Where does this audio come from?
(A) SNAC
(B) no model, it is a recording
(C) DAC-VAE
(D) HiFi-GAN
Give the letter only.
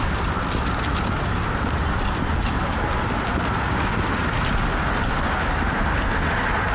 B